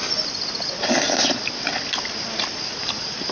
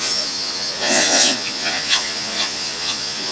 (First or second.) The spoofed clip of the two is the second